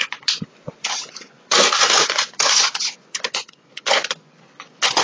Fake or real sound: fake